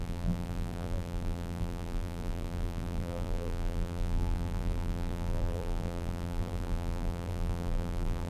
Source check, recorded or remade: remade